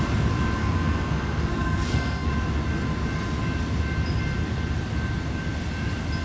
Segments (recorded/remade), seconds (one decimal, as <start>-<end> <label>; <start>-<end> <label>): 0.0-0.6 recorded; 0.6-2.3 remade; 2.3-6.2 recorded